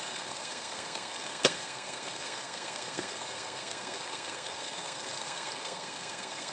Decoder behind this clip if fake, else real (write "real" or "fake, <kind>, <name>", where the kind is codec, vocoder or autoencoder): fake, codec, SNAC